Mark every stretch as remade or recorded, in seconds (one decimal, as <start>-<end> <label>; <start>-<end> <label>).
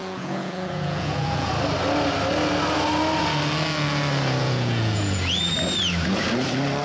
0.0-1.5 remade; 1.5-4.4 recorded; 4.4-5.5 remade; 5.5-6.8 recorded